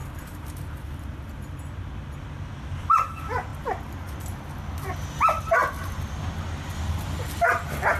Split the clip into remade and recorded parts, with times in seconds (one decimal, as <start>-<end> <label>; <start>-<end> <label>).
0.0-2.3 remade; 2.3-8.0 recorded